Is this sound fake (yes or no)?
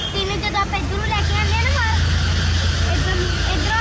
no